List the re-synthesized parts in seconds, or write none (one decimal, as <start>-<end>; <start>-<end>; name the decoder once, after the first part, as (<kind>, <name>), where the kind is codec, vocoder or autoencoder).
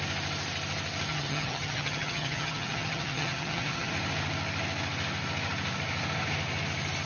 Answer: 1.1-3.9 (vocoder, HiFi-GAN)